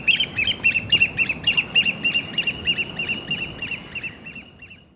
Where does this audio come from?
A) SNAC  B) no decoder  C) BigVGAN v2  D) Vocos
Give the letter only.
B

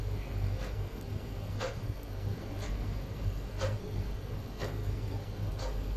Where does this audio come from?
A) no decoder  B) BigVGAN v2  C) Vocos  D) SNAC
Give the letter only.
D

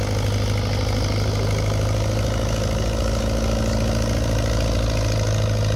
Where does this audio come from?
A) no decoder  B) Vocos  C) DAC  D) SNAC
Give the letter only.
A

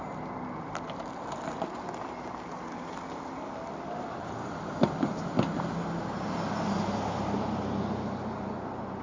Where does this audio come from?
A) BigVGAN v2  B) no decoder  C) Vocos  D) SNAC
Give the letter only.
B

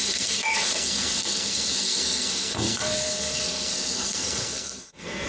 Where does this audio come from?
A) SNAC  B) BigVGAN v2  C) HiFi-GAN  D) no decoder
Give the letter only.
A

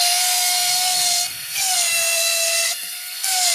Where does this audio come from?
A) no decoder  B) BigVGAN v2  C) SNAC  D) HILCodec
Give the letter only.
C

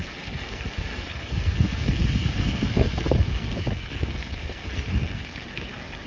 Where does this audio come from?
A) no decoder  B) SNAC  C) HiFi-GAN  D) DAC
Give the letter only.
B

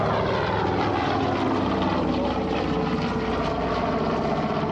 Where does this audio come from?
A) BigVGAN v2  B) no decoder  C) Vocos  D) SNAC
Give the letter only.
B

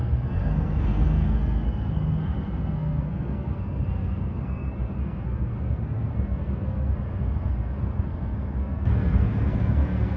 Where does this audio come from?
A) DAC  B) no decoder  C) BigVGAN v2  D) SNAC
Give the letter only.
D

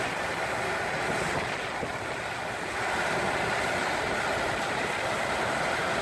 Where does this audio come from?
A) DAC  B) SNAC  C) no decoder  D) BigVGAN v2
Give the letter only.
C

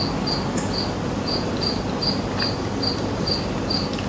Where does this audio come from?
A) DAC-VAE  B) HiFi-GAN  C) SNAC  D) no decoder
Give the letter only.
D